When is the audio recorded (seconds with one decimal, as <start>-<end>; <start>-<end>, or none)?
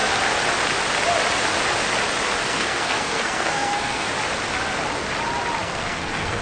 0.0-2.4; 4.1-5.6